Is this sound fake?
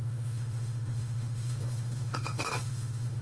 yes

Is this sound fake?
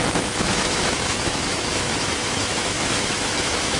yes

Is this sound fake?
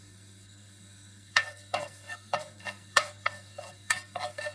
yes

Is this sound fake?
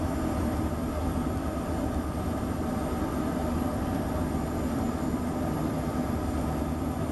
no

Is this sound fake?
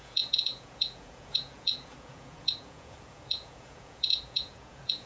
yes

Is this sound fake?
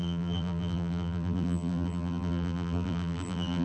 yes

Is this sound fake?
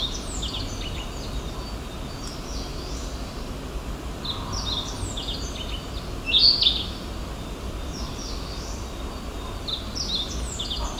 no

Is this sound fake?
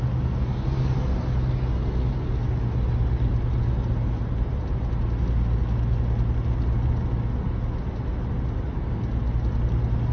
no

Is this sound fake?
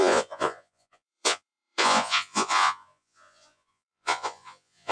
yes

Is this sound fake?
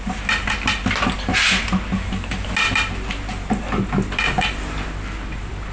no